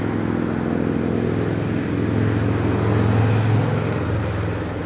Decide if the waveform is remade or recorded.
recorded